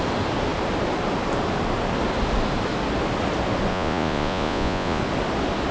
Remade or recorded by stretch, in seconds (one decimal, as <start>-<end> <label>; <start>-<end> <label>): 0.0-3.7 recorded; 3.7-5.0 remade; 5.0-5.7 recorded